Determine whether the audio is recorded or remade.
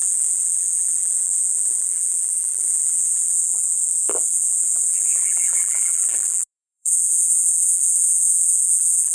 remade